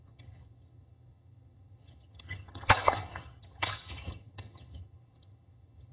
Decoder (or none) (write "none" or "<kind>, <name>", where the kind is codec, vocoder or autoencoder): vocoder, HiFi-GAN